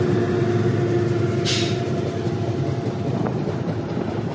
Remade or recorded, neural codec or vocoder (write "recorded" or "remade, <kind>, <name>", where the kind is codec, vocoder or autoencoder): recorded